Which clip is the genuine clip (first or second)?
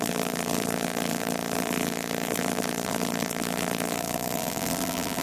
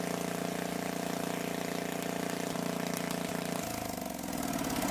second